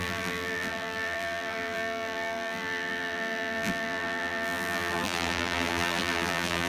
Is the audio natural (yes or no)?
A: no